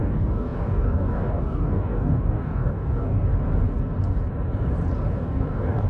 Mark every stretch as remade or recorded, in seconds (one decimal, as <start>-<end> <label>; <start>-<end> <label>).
0.0-3.3 remade; 3.3-5.1 recorded; 5.1-5.9 remade